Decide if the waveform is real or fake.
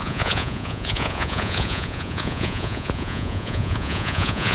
fake